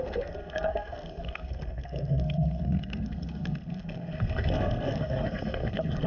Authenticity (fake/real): fake